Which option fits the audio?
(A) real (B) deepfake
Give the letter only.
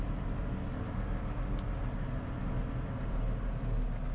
A